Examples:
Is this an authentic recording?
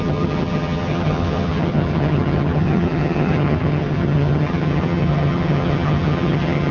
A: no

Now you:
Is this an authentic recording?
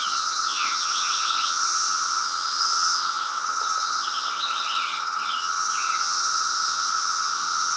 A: no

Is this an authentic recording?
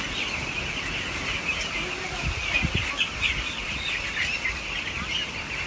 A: yes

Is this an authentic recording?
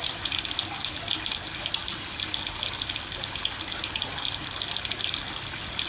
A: yes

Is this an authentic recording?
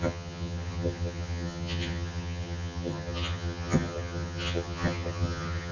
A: no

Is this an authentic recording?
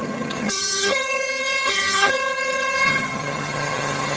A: no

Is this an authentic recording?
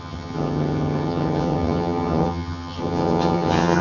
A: no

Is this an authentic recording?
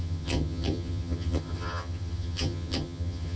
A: no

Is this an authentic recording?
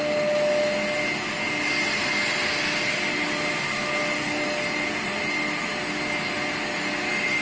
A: yes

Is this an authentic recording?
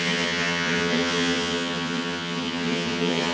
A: no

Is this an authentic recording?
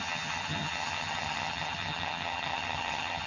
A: no